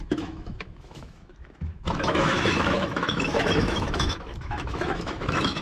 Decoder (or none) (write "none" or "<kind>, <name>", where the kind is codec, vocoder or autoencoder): autoencoder, DAC-VAE